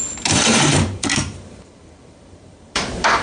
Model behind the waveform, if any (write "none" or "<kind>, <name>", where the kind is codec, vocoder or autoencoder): vocoder, BigVGAN v2